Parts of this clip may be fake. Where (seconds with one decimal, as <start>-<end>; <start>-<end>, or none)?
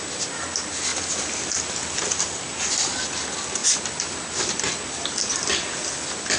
none